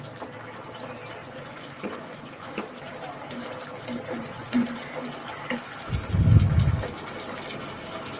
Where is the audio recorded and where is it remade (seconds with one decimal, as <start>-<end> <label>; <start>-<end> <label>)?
0.0-1.2 recorded; 1.2-2.6 remade; 2.6-4.2 recorded; 4.2-4.8 remade; 4.8-8.2 recorded